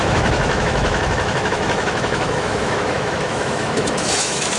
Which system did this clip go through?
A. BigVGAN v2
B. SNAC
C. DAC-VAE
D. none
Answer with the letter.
C